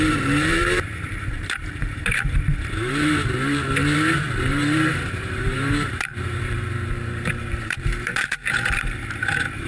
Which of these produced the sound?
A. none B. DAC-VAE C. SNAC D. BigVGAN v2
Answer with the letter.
D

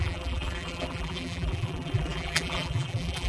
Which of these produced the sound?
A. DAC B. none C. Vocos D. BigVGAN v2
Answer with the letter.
D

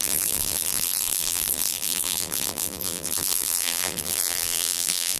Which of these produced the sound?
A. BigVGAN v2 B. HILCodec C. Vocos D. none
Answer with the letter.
A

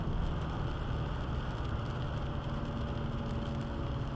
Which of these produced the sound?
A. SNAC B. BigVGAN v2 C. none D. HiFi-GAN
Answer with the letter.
C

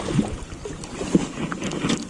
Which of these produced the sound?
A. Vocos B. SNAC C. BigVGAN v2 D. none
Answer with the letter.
D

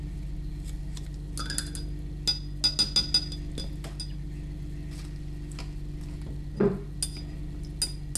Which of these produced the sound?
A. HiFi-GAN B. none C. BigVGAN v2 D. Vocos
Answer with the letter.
B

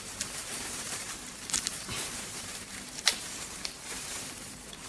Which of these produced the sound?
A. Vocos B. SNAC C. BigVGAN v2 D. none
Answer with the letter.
C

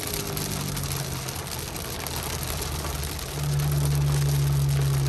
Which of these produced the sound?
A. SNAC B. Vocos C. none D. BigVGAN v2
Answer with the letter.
C